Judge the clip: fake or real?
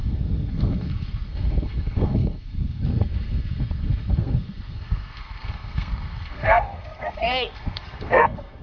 fake